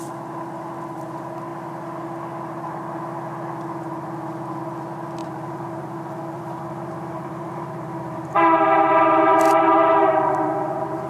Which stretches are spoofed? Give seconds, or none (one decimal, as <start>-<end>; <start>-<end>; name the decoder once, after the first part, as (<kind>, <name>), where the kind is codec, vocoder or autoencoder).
5.2-10.3 (vocoder, BigVGAN v2)